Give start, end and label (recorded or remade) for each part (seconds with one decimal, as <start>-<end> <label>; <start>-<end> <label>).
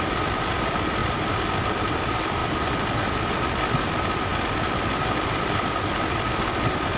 0.0-7.0 recorded